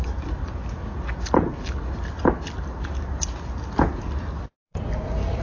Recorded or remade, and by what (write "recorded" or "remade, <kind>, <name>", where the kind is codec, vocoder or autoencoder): recorded